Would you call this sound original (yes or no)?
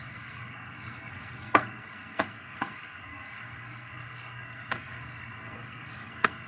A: no